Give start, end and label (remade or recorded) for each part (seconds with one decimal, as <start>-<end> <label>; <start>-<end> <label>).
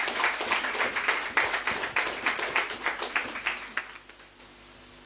0.0-5.1 recorded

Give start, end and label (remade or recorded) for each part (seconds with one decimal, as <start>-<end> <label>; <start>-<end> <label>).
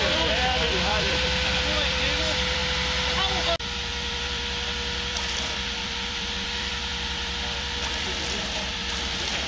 0.0-2.6 remade; 2.6-3.6 recorded; 3.6-9.5 remade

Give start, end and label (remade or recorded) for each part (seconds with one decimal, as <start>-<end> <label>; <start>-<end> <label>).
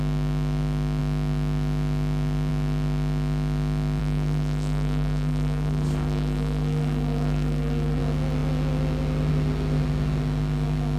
0.0-4.0 recorded; 4.0-8.0 remade; 8.0-11.0 recorded